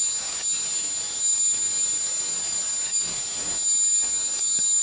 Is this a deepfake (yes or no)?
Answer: yes